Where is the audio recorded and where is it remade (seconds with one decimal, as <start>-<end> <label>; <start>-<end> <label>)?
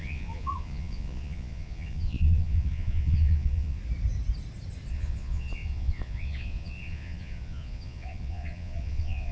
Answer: 0.0-3.8 remade; 3.8-4.9 recorded; 4.9-9.3 remade